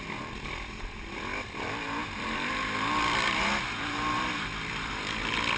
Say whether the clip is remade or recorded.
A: recorded